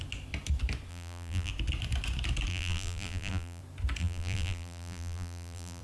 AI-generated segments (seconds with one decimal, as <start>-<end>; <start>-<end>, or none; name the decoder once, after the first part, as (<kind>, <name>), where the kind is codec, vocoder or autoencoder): 0.9-1.5 (vocoder, BigVGAN v2); 2.5-3.6; 4.0-5.8